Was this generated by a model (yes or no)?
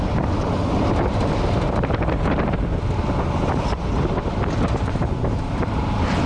no